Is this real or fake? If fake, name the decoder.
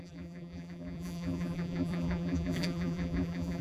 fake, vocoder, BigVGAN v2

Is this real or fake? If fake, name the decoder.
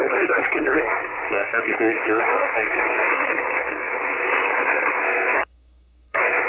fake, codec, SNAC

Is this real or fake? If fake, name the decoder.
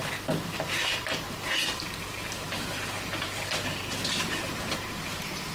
fake, vocoder, BigVGAN v2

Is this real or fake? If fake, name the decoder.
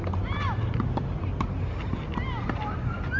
real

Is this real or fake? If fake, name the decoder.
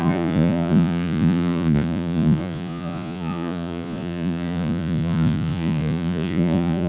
fake, vocoder, Vocos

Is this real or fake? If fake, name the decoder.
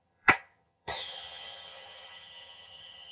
fake, vocoder, HiFi-GAN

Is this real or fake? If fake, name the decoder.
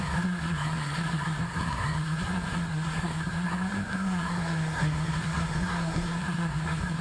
fake, codec, SNAC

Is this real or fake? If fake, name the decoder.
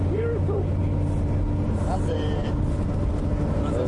real